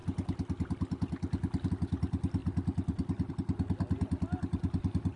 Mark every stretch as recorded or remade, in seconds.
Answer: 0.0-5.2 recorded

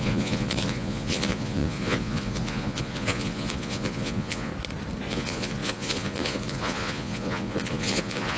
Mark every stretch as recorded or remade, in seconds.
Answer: 0.0-4.5 remade; 4.5-5.1 recorded; 5.1-8.4 remade

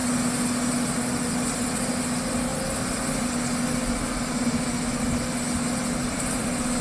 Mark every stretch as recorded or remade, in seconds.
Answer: 0.0-6.8 recorded

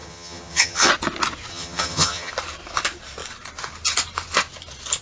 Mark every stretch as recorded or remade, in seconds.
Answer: 0.0-0.9 remade; 0.9-1.5 recorded; 1.5-2.3 remade; 2.3-5.0 recorded

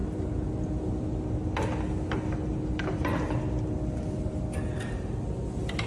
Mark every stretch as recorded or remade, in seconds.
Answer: 0.0-5.9 recorded

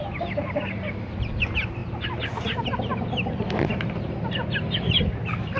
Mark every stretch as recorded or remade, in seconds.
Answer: 0.0-5.6 recorded

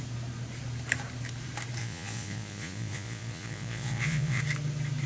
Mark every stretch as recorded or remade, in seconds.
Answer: 0.0-1.8 recorded; 1.8-4.4 remade; 4.4-5.1 recorded